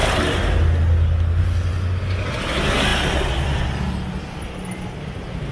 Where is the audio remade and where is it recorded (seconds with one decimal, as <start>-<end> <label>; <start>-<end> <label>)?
0.0-0.5 remade; 0.5-2.9 recorded; 2.9-3.6 remade; 3.6-5.5 recorded